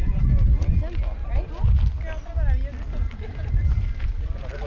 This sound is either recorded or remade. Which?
recorded